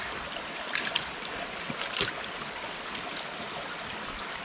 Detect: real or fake real